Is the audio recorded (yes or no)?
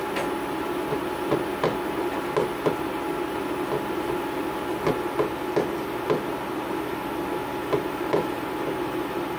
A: yes